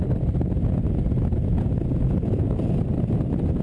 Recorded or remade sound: recorded